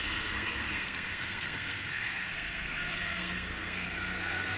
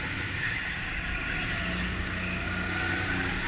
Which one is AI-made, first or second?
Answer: first